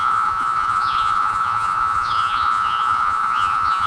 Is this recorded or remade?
remade